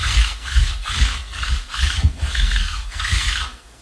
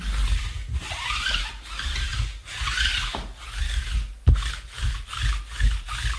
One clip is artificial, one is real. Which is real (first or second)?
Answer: second